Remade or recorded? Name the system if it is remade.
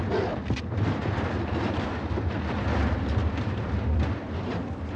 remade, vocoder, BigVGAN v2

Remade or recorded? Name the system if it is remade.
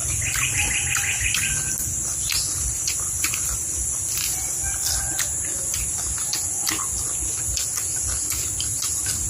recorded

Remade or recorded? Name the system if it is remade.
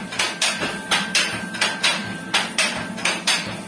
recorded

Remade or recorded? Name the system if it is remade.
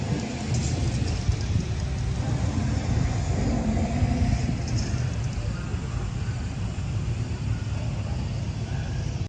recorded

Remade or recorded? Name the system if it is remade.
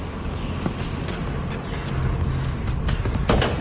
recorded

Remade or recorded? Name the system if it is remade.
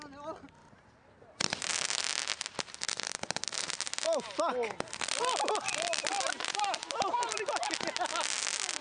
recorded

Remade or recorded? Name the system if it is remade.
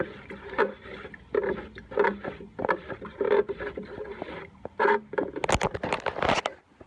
recorded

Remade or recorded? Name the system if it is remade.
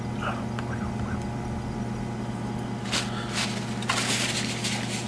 recorded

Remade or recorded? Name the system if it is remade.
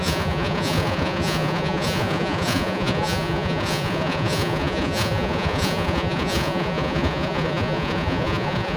remade, vocoder, Vocos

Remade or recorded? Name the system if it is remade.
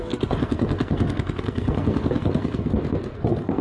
remade, codec, SNAC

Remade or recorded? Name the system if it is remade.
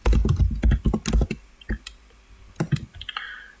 recorded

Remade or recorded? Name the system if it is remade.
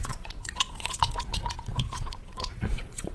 remade, vocoder, Vocos